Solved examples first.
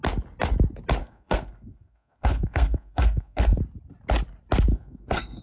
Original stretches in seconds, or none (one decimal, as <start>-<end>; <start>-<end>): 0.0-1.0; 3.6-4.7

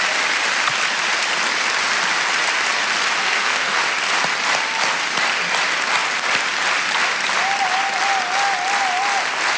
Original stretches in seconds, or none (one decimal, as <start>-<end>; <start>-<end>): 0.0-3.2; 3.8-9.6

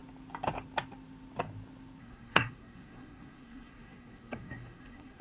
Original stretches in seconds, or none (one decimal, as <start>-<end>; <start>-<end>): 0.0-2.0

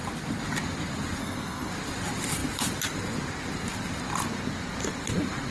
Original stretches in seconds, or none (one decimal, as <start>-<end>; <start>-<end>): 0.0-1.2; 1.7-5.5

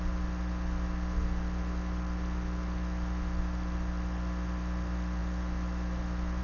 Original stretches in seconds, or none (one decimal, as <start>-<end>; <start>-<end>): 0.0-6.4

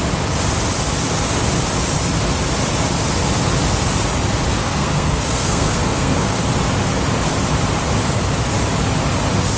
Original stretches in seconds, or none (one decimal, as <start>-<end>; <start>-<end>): 0.0-4.6; 6.4-9.6